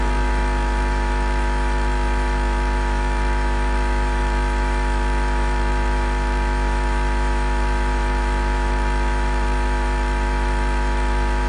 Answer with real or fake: fake